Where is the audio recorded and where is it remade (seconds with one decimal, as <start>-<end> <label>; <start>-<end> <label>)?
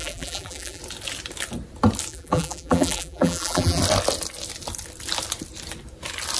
0.0-0.8 remade; 0.8-2.1 recorded; 2.1-3.8 remade; 3.8-6.4 recorded